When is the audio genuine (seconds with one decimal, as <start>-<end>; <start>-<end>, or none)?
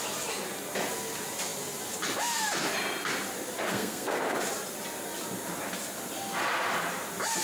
0.0-3.7; 4.2-7.4